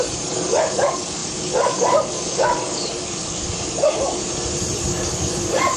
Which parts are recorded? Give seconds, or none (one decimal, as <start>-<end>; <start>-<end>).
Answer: 4.2-4.8